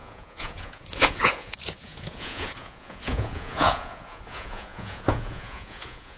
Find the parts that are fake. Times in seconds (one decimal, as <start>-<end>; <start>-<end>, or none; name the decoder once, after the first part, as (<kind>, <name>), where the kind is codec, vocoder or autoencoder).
0.0-6.2 (vocoder, Vocos)